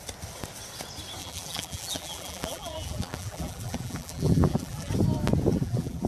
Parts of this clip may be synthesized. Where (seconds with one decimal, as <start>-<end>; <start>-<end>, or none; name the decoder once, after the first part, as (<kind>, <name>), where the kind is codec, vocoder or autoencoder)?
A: 1.2-4.9 (vocoder, BigVGAN v2); 5.5-6.1